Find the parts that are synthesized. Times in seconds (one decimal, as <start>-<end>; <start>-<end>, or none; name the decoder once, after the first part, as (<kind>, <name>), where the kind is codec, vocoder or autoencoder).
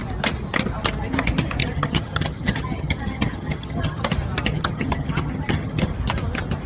1.6-4.0 (vocoder, HiFi-GAN); 4.5-5.9